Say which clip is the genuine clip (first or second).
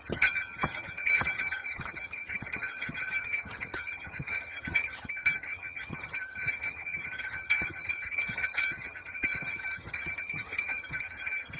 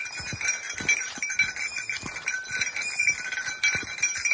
second